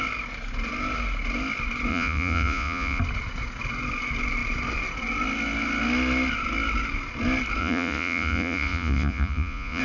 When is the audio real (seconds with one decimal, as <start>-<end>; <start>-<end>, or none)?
0.0-1.9; 3.0-7.6